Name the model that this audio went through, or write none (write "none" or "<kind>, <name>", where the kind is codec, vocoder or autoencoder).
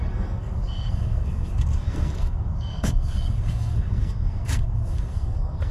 codec, SNAC